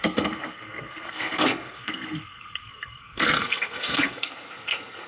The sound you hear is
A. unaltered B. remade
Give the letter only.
B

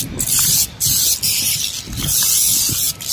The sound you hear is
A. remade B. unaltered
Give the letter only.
B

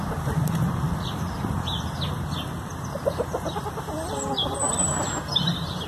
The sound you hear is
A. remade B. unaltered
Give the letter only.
B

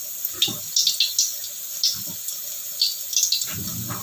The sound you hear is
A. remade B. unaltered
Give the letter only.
B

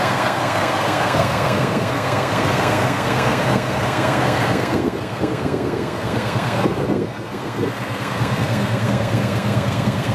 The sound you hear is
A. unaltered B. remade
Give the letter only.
B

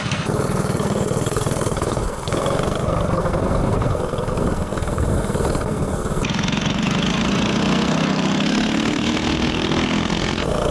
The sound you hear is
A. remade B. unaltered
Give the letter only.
A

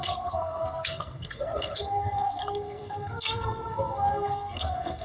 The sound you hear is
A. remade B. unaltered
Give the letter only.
A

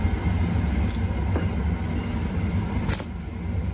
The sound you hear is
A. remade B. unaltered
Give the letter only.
B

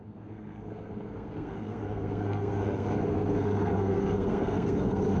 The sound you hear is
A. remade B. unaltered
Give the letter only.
A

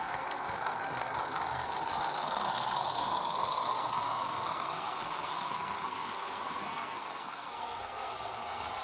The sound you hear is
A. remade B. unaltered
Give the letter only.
A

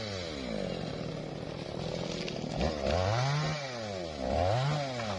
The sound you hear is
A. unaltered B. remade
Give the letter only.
A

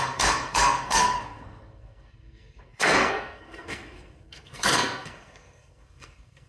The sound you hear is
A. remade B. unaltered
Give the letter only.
A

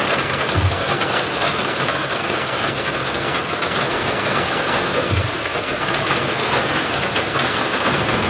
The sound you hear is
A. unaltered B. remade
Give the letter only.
B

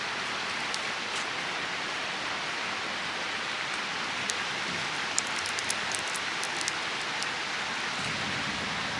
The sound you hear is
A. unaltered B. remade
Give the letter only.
A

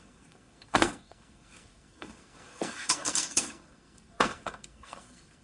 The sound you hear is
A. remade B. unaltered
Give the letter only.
A